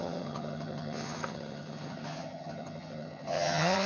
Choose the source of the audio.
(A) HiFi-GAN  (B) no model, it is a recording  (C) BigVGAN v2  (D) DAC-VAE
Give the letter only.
A